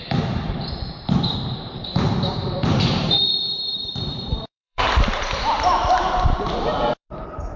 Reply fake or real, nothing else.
fake